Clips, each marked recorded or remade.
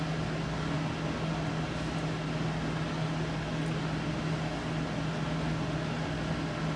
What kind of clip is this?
recorded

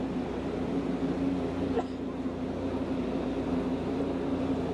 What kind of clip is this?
recorded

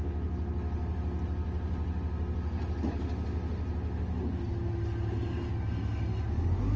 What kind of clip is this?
recorded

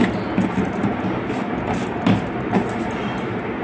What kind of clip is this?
recorded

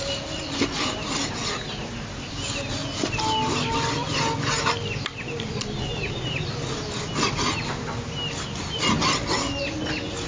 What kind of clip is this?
recorded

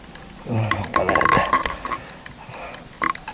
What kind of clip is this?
recorded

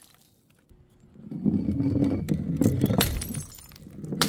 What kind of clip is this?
recorded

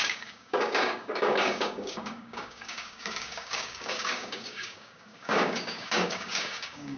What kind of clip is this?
remade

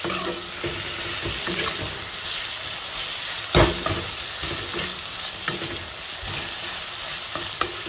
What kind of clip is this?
recorded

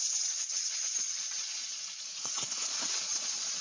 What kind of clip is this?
remade